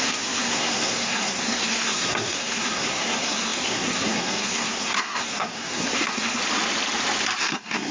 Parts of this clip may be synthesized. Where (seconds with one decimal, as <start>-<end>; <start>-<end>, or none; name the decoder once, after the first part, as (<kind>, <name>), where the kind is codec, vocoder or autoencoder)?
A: 0.0-6.4 (codec, SNAC); 7.4-7.9

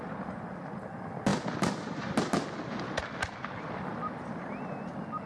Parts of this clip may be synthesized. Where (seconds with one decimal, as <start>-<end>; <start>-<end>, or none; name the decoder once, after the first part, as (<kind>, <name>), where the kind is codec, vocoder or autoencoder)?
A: none

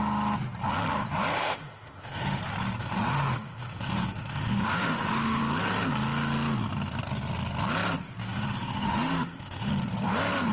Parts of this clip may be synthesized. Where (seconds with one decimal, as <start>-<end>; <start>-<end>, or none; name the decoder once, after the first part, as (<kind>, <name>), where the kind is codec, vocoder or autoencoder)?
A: 1.3-2.4 (autoencoder, DAC-VAE); 2.8-5.4; 8.2-9.7

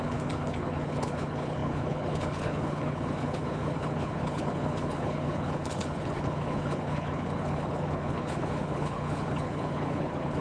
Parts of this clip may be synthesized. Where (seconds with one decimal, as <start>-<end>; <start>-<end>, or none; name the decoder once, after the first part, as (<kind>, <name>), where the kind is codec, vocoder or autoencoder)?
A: 0.0-10.4 (codec, HILCodec)

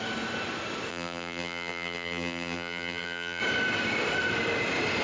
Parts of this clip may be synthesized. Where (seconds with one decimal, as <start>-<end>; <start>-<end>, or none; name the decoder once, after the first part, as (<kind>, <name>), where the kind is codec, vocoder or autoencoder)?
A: 0.9-3.4 (vocoder, BigVGAN v2)

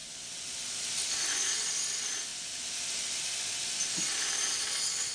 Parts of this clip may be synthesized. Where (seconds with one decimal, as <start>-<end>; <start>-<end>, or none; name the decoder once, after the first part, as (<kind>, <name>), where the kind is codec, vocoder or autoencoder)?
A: none

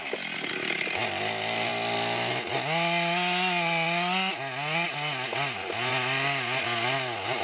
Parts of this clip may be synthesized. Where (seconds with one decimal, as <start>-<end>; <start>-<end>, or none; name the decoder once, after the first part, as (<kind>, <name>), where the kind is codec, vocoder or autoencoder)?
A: none